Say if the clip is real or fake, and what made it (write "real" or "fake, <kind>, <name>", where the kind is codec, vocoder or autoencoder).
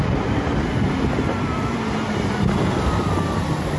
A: real